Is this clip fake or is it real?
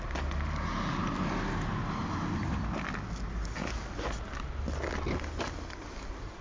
real